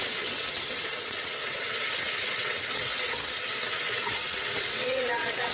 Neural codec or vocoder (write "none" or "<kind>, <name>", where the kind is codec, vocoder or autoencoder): vocoder, WaveNeXt